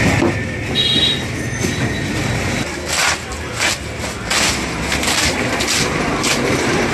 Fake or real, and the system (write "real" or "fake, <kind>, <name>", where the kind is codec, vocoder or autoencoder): real